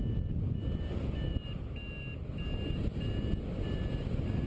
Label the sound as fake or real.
real